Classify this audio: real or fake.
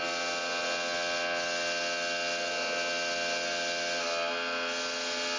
real